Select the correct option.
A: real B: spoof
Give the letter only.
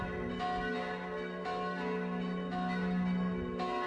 A